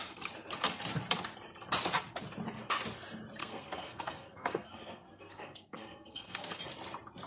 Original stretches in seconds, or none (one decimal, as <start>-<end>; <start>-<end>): 0.0-3.4; 6.6-7.3